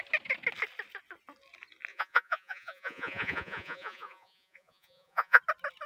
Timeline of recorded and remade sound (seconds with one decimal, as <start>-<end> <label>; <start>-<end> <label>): 0.0-1.9 recorded; 1.9-5.4 remade; 5.4-5.9 recorded